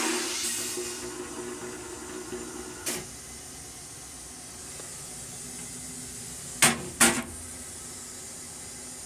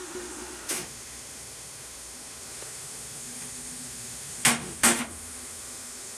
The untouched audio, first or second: first